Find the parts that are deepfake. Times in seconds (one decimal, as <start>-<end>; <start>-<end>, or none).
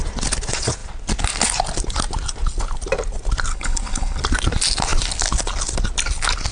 3.5-4.2